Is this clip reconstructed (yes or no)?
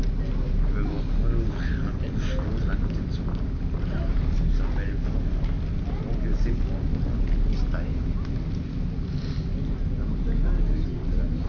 no